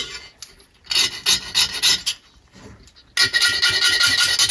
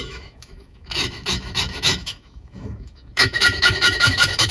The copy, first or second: second